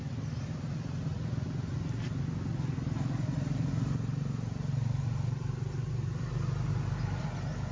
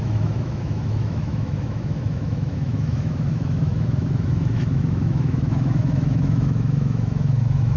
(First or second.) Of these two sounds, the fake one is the second